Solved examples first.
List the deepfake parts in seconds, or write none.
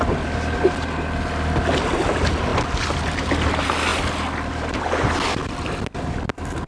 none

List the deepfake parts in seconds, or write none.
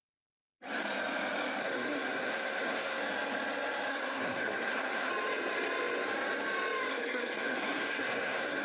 1.6-3.0; 3.9-5.1; 6.9-8.6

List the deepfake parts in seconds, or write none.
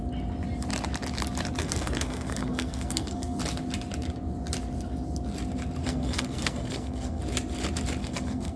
1.6-3.4; 5.8-7.2; 8.0-8.6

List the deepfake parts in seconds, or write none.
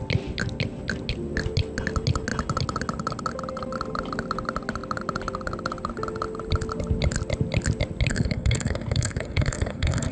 8.1-10.1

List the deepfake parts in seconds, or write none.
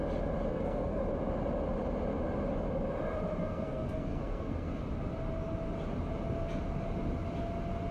0.5-1.0; 3.4-4.8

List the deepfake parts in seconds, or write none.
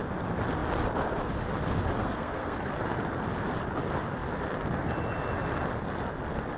2.0-2.7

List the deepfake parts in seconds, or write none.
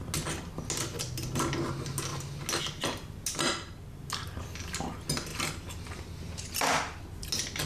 none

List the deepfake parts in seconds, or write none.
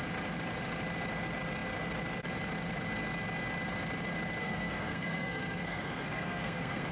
4.4-6.9